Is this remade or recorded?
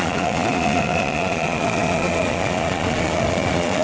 remade